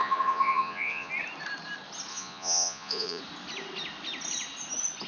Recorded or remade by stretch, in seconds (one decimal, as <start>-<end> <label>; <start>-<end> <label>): 0.0-1.1 remade; 1.1-2.1 recorded; 2.1-3.2 remade; 3.2-5.1 recorded